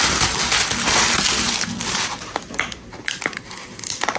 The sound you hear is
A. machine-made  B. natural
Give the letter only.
B